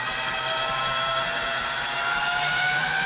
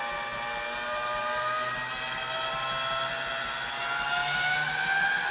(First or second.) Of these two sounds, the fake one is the first